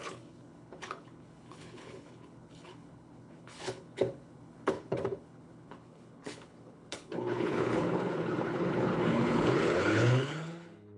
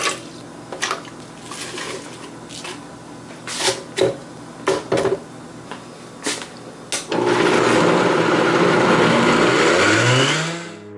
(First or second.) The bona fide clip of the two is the second